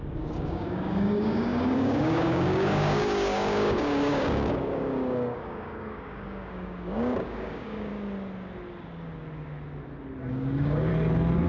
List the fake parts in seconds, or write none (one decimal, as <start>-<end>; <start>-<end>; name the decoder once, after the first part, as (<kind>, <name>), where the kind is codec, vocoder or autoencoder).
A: 0.0-7.9 (codec, DAC); 10.3-10.9